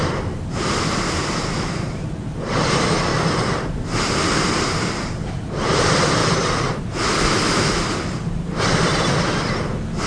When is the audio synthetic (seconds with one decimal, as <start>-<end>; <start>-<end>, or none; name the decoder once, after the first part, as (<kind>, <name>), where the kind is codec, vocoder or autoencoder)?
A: 1.2-3.1 (vocoder, BigVGAN v2); 5.1-10.1